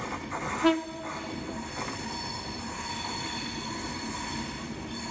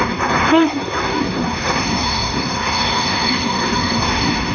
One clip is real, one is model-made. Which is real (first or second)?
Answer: first